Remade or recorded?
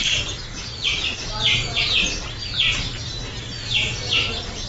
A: recorded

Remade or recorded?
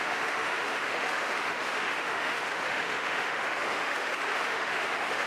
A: remade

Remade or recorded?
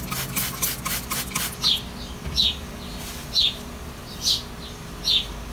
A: recorded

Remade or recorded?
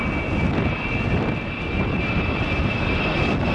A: recorded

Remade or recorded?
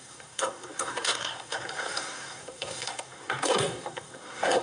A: remade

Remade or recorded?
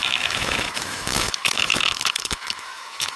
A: remade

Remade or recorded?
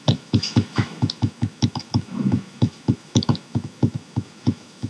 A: remade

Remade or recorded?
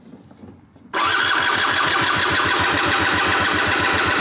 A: recorded